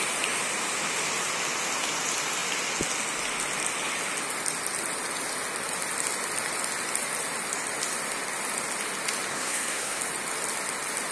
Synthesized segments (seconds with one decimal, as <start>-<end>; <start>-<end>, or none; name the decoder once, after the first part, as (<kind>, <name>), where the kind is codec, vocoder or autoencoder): 9.3-10.0 (codec, SNAC)